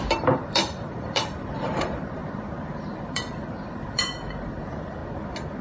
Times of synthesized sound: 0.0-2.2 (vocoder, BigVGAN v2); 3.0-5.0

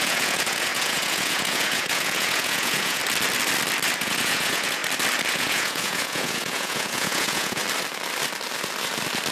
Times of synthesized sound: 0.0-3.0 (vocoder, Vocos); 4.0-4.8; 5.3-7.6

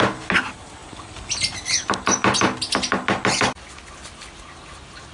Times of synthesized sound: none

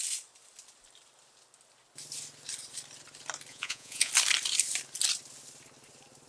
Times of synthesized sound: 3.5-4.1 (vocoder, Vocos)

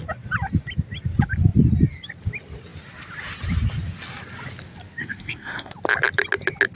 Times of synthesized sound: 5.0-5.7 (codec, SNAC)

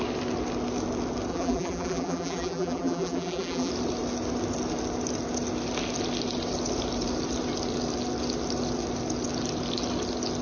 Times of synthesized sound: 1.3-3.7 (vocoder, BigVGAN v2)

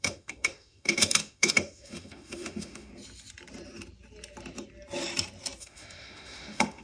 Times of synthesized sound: 0.0-2.9 (autoencoder, DAC-VAE); 5.6-6.8

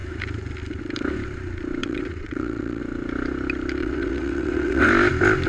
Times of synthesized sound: 1.8-2.8 (vocoder, WaveNeXt); 3.8-4.9